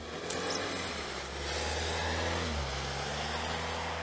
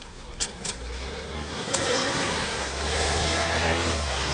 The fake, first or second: second